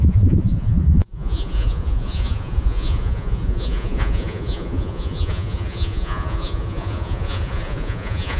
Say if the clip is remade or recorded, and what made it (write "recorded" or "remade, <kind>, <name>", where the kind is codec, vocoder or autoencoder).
remade, vocoder, Vocos